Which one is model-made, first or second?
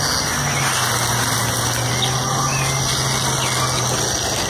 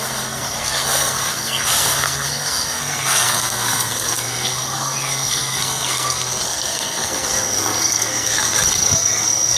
second